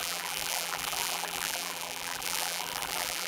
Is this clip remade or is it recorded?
remade